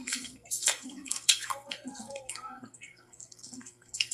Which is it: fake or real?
fake